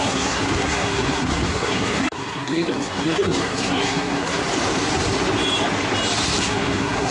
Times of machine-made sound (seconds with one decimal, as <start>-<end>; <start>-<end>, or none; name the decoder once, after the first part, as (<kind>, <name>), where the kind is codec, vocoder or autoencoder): 0.0-4.4 (codec, SNAC); 6.4-7.1